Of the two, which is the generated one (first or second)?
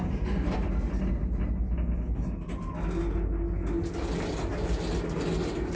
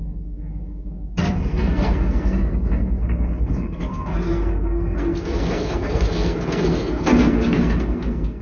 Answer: second